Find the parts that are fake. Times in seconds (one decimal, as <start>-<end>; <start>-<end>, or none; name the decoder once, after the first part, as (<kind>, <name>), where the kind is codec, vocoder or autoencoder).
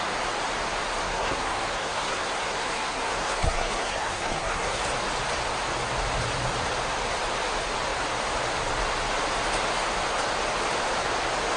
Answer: 1.0-4.8 (codec, SNAC)